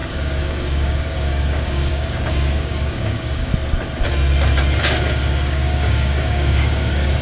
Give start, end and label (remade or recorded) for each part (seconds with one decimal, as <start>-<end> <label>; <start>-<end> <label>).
0.0-3.5 remade; 3.5-4.8 recorded; 4.8-7.2 remade